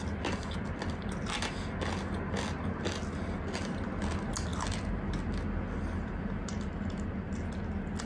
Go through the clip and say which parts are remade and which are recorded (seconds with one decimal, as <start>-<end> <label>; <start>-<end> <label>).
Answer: 0.0-8.1 recorded